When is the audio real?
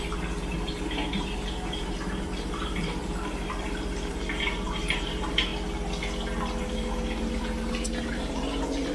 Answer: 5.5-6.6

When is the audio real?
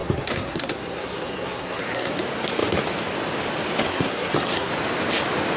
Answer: 2.1-3.9; 4.7-5.6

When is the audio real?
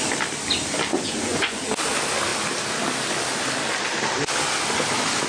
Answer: 0.0-0.9; 1.6-5.3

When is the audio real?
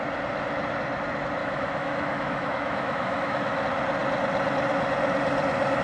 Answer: 0.0-1.4; 3.6-5.8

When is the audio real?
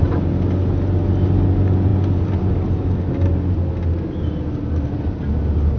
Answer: 0.0-5.8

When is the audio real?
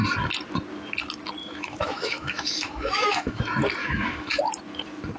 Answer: 0.0-1.4; 3.4-3.8; 4.4-5.2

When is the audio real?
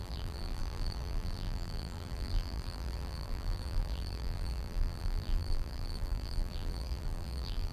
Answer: none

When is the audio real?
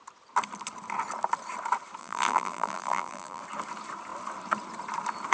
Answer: 0.0-2.0; 3.4-5.3